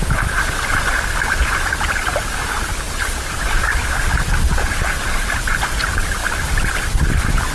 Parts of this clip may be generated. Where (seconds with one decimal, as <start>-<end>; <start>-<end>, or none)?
none